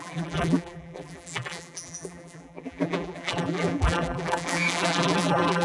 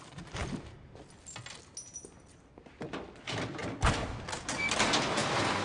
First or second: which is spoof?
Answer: first